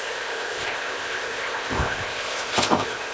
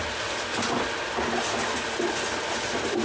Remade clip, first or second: first